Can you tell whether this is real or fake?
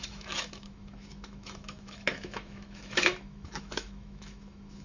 fake